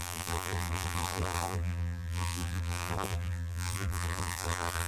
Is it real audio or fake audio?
fake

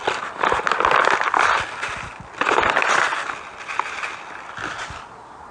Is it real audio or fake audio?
real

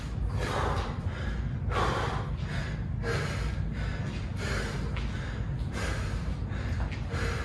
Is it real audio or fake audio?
real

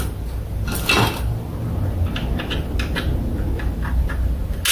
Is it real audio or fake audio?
real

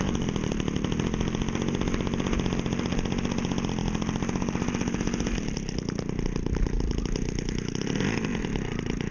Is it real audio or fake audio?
real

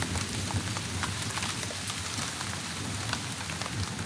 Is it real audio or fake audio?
real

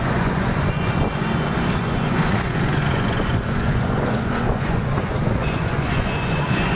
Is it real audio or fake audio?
fake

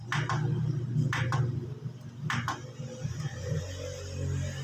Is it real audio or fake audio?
real